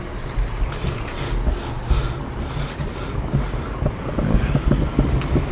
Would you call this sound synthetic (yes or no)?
no